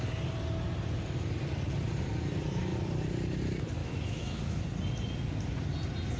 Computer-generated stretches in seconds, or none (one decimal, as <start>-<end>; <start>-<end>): 3.8-4.6